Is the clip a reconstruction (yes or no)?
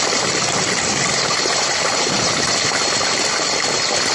yes